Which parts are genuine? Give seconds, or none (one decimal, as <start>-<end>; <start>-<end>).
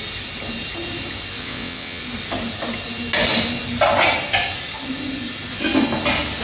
0.0-1.4; 2.0-6.4